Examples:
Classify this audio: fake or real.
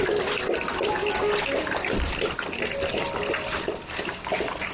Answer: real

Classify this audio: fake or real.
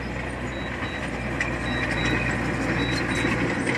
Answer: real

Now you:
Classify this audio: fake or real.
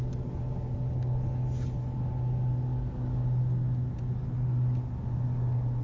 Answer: real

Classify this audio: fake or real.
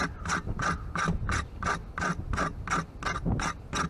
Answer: real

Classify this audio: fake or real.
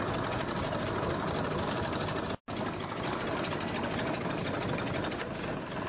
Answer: real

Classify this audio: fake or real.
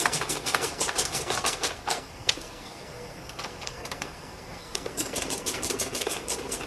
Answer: fake